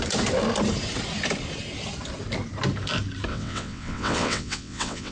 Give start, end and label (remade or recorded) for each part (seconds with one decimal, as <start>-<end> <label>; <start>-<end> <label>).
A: 0.0-3.3 recorded; 3.3-5.1 remade